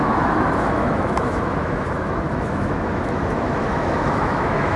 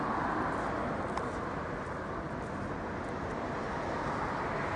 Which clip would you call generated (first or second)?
first